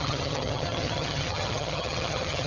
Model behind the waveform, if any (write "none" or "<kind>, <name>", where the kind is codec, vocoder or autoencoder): vocoder, HiFi-GAN